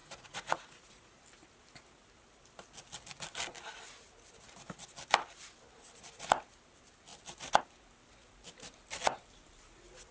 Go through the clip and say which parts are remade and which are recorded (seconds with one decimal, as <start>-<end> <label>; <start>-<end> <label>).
0.0-1.2 remade; 1.2-10.1 recorded